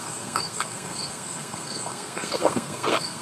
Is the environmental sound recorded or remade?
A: remade